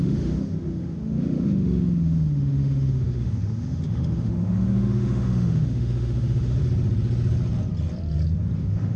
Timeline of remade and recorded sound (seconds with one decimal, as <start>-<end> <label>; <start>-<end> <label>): 0.0-6.6 remade; 6.6-8.6 recorded; 8.6-9.0 remade